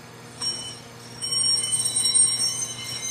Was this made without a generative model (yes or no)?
no